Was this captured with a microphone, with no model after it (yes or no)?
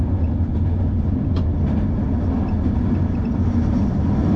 yes